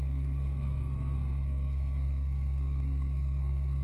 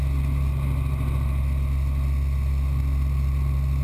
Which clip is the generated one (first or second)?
first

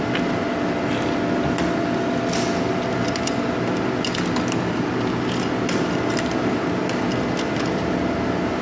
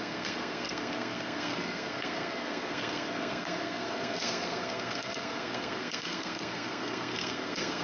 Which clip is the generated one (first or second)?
second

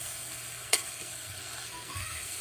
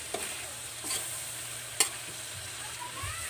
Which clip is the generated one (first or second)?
first